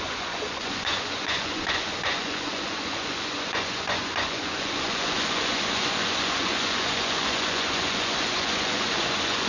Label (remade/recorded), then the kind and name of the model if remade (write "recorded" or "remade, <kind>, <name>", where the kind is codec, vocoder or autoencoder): remade, vocoder, Vocos